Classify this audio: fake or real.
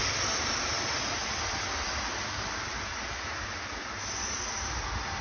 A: real